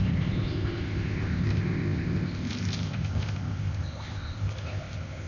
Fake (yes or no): yes